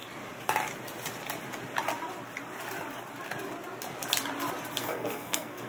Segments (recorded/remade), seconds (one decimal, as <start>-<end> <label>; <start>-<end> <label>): 0.0-4.8 recorded; 4.8-5.7 remade